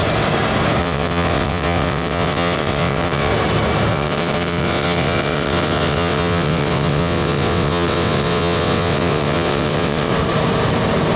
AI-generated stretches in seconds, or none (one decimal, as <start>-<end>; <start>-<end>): 0.8-3.3; 3.9-10.1